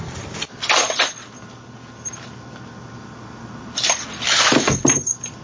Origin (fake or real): real